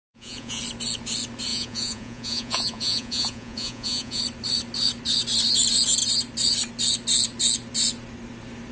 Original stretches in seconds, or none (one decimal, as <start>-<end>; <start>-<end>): 0.6-1.5; 4.2-8.7